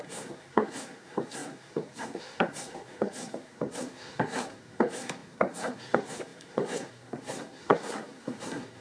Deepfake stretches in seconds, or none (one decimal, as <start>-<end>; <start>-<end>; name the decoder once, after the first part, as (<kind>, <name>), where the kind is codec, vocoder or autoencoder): 0.0-8.8 (codec, SNAC)